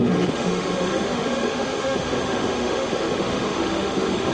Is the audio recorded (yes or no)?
no